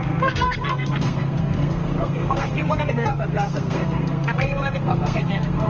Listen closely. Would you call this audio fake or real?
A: fake